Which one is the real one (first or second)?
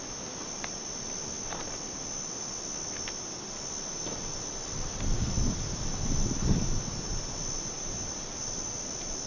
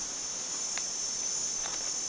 first